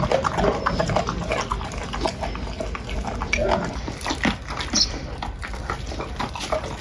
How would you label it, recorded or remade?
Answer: recorded